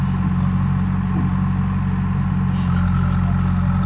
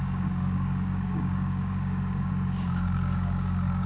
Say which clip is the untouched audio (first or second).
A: first